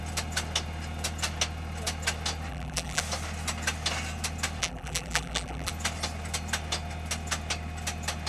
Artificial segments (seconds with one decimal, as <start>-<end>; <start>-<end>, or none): 2.5-3.0; 4.6-5.7